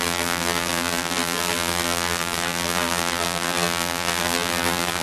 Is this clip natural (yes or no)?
no